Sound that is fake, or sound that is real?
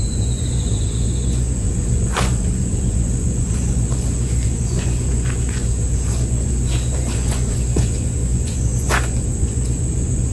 fake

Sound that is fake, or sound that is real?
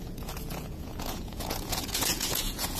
fake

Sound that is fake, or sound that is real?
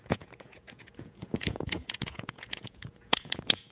fake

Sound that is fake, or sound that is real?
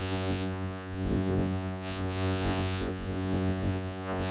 fake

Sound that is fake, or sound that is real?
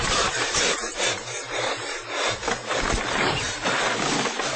real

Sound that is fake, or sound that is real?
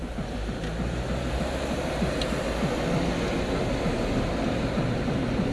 real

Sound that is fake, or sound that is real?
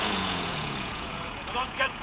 fake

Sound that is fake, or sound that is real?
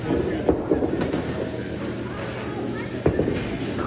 real